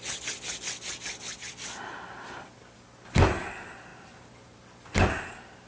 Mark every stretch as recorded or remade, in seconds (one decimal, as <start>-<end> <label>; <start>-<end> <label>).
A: 0.0-5.7 recorded